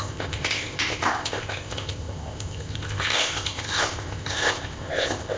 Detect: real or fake fake